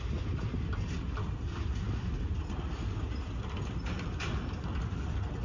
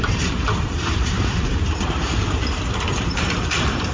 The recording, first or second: first